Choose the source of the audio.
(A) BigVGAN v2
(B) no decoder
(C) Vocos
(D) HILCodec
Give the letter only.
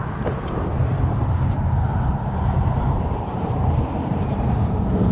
A